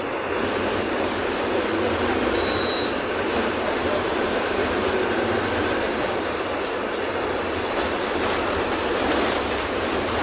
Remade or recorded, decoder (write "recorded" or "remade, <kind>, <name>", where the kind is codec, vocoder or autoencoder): remade, vocoder, BigVGAN v2